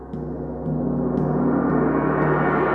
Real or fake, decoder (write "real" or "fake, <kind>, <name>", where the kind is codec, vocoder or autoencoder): real